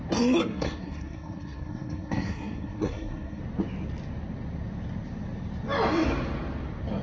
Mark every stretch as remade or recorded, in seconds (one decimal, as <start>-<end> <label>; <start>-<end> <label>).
0.0-0.4 recorded; 0.4-3.4 remade; 3.4-7.0 recorded